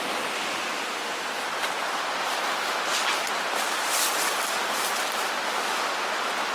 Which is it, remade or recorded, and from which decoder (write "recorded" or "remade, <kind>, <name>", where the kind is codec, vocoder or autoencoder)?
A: recorded